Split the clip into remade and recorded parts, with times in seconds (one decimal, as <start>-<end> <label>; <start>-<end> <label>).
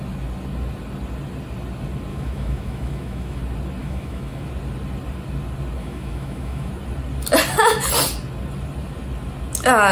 0.0-2.1 recorded; 2.1-3.4 remade; 3.4-3.8 recorded; 3.8-4.5 remade; 4.5-5.8 recorded; 5.8-6.7 remade; 6.7-9.9 recorded